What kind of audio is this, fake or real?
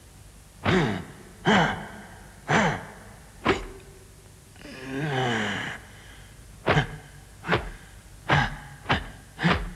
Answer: real